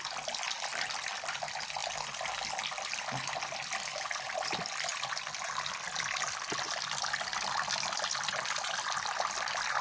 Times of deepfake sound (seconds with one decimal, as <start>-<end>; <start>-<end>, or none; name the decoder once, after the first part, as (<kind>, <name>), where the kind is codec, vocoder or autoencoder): none